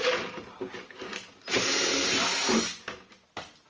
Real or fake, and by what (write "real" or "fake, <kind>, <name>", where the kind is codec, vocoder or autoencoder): real